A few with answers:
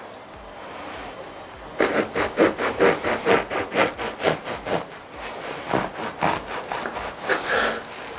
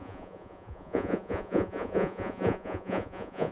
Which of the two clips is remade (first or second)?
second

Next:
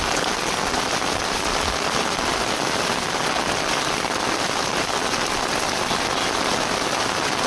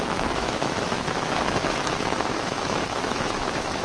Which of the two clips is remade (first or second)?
second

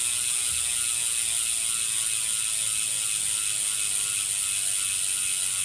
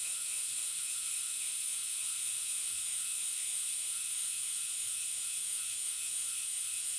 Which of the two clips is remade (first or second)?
second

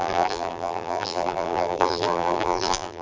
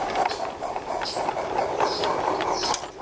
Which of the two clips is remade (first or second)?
first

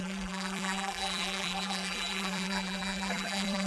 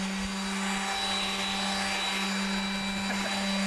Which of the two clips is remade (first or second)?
first